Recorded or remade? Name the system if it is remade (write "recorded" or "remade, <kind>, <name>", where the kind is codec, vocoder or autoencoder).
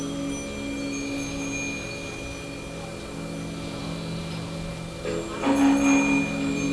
recorded